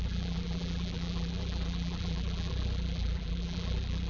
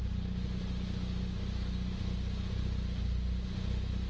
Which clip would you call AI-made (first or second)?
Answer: first